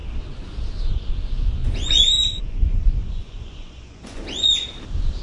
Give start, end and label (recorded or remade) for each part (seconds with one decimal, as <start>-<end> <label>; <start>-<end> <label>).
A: 0.0-1.6 recorded; 1.6-4.7 remade; 4.7-5.2 recorded